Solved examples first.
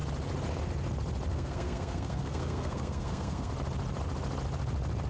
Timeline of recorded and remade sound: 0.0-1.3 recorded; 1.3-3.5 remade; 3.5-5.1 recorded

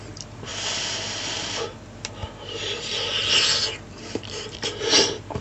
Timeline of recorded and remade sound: 0.0-5.4 recorded

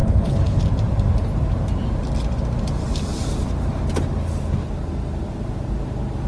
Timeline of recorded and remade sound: 0.0-0.6 remade; 0.6-6.3 recorded

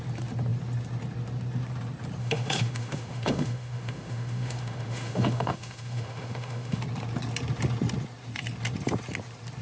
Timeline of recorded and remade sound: 0.0-2.2 recorded; 2.2-6.8 remade; 6.8-9.6 recorded

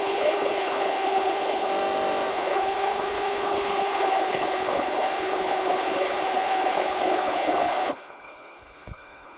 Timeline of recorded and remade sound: 0.0-1.7 remade; 1.7-2.3 recorded; 2.3-9.4 remade